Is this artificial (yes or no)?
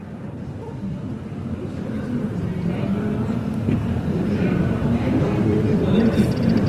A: no